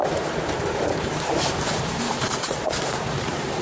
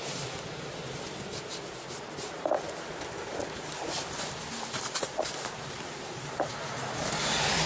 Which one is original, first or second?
second